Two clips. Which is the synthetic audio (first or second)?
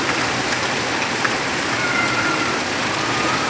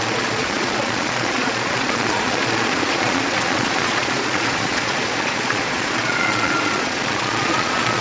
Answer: second